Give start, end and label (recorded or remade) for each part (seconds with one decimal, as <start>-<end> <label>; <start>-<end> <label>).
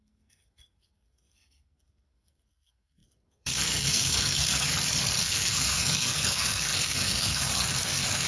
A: 0.0-4.7 remade; 4.7-5.2 recorded; 5.2-8.3 remade